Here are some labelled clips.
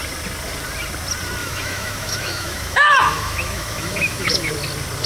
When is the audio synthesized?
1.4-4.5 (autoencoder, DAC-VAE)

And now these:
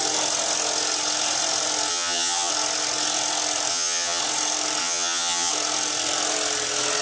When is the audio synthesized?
1.9-2.5 (vocoder, HiFi-GAN); 3.7-4.2; 4.8-5.5

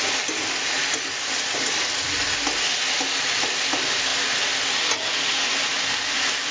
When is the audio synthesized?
none

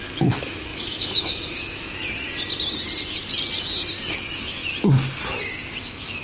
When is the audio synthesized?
0.0-2.0 (autoencoder, DAC-VAE); 4.1-4.6; 5.8-6.2